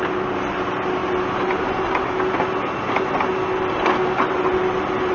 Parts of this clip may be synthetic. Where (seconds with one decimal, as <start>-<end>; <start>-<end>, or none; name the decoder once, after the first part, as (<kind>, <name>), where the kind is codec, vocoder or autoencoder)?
none